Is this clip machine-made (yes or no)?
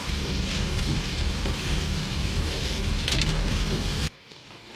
yes